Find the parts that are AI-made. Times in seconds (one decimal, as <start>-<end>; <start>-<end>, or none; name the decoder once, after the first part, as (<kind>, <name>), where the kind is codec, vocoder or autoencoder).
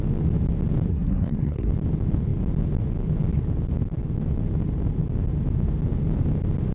0.9-1.7 (codec, SNAC)